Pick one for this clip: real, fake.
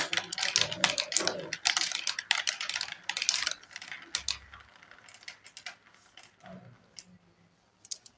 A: real